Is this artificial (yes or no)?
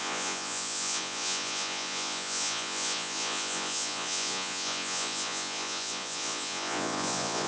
yes